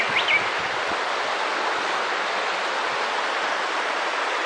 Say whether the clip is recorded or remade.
recorded